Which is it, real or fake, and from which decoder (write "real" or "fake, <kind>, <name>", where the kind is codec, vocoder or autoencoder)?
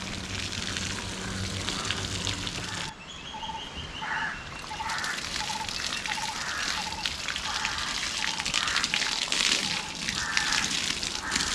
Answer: real